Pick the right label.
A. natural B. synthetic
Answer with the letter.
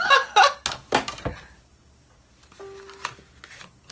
A